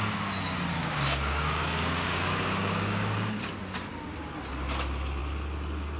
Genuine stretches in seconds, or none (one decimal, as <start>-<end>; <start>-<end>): 0.0-0.8; 3.4-6.0